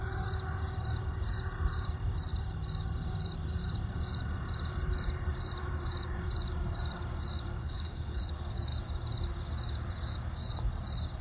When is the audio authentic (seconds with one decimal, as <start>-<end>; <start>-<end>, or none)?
0.0-7.6; 8.2-11.2